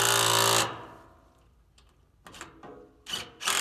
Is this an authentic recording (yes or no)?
yes